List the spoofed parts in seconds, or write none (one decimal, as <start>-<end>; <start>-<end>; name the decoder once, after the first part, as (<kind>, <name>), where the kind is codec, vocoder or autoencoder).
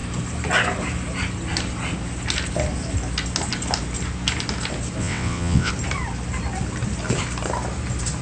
5.0-5.7 (vocoder, WaveNeXt)